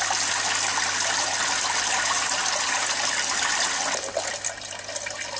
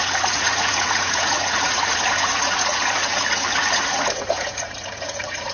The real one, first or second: first